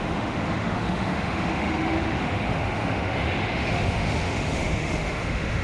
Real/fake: fake